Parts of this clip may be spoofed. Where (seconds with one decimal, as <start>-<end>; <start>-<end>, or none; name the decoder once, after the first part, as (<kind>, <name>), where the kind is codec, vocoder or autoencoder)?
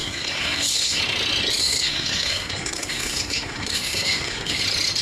0.0-1.0 (codec, SNAC); 1.6-4.6